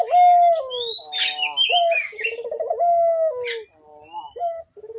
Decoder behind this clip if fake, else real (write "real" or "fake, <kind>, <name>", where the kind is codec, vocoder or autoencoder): real